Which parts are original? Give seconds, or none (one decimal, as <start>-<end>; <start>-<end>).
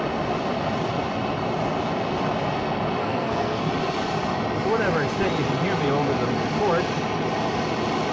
0.0-3.0; 3.7-8.1